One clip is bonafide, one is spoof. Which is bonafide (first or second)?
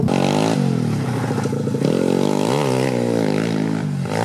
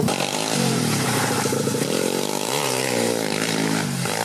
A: first